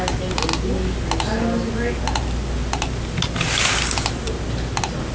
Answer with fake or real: real